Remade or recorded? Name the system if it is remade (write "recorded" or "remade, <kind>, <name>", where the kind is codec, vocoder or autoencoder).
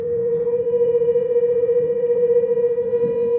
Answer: remade, vocoder, Vocos